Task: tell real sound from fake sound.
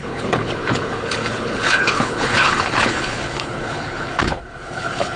fake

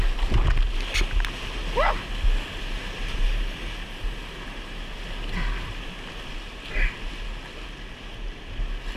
real